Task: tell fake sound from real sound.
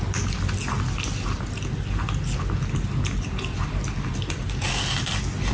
real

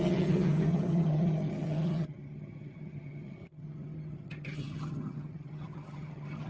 fake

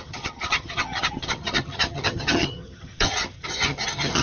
fake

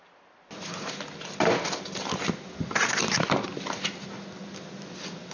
real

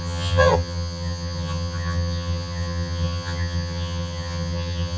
fake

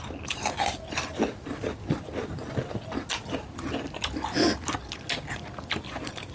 real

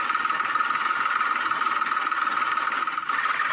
real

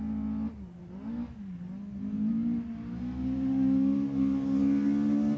real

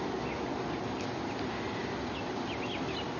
real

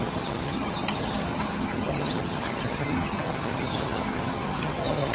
fake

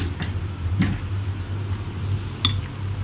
real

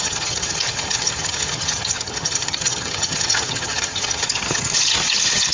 fake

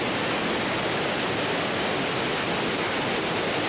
real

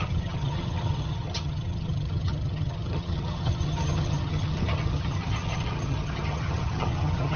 fake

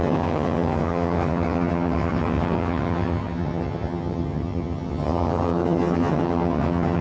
fake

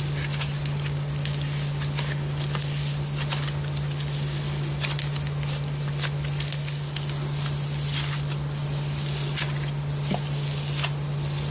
real